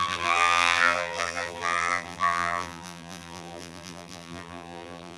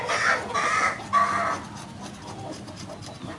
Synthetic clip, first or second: first